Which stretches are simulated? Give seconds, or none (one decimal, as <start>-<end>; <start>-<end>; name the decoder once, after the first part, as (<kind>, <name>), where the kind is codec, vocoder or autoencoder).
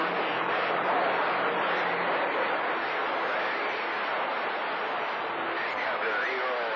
none